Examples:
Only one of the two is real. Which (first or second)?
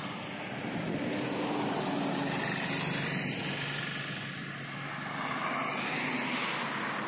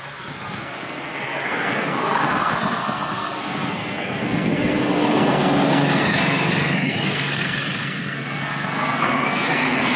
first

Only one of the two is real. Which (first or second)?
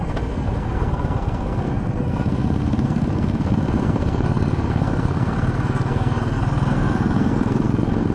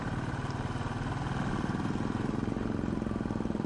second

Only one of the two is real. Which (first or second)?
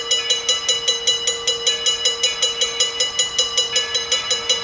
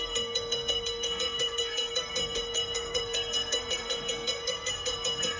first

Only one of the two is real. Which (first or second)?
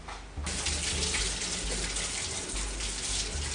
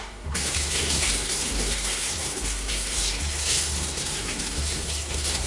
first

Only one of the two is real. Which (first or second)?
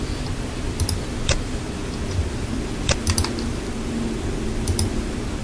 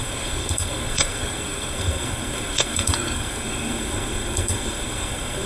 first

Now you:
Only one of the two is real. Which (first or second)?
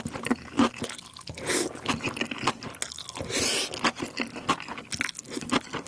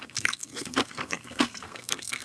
first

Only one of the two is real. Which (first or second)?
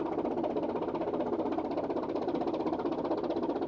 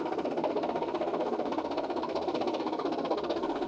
first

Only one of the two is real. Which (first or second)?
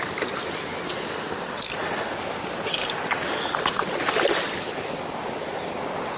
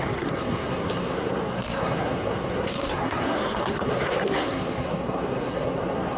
first